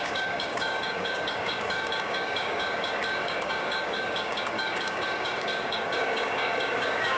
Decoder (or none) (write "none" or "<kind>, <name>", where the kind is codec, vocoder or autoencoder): codec, DAC